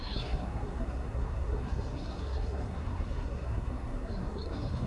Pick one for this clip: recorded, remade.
remade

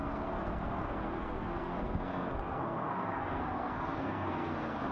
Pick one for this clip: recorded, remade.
remade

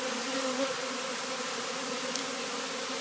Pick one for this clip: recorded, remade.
recorded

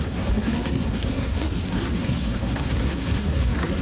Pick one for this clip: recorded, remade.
remade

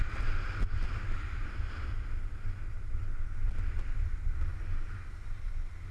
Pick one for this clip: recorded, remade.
recorded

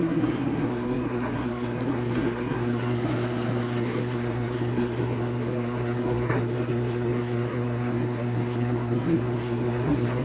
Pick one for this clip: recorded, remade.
remade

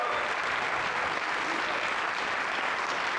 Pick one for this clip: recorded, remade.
recorded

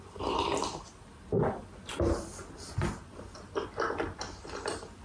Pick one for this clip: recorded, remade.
recorded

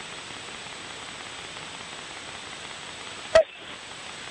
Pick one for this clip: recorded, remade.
recorded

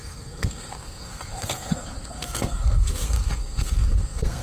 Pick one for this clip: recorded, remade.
remade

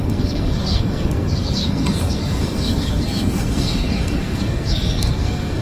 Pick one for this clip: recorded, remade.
remade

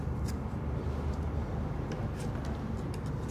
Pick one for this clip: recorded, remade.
recorded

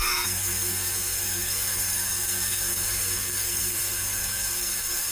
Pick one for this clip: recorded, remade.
remade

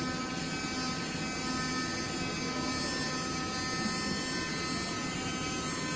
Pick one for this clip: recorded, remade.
recorded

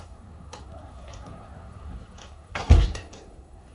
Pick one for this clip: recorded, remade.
remade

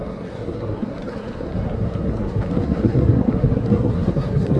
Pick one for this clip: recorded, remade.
remade